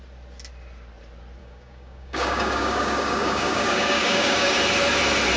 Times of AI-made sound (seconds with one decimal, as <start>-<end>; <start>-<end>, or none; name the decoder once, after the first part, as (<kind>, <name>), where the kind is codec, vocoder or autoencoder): 1.4-4.6 (codec, DAC)